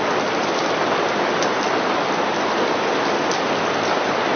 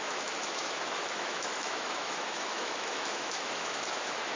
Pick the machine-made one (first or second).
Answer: second